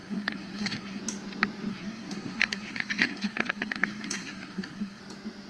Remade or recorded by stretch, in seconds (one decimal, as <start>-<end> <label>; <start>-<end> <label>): 0.0-1.0 remade; 1.0-1.7 recorded; 1.7-5.0 remade; 5.0-5.5 recorded